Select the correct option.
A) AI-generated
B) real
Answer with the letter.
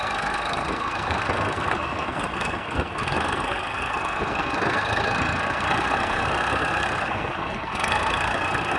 A